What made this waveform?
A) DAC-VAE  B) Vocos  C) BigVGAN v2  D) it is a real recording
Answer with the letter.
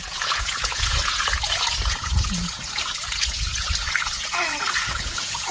B